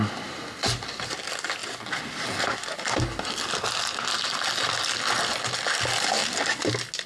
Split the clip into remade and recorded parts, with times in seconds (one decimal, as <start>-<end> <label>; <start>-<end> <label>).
0.0-7.1 recorded